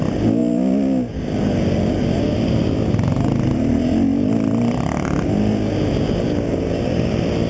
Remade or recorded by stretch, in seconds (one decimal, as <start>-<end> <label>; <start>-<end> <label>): 0.0-7.5 recorded

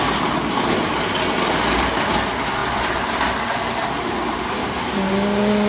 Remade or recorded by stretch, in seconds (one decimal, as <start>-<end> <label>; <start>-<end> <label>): 0.0-5.7 recorded

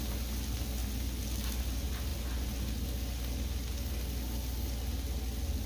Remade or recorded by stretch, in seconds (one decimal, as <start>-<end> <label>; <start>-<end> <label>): 0.0-5.7 recorded

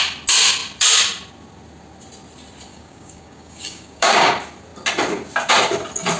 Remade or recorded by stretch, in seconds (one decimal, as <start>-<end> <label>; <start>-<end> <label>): 0.0-2.7 recorded; 2.7-4.3 remade; 4.3-6.2 recorded

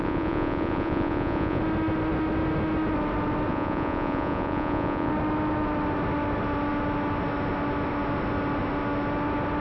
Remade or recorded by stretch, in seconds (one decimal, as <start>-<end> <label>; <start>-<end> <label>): 0.0-1.6 remade; 1.6-3.5 recorded; 3.5-5.1 remade; 5.1-9.6 recorded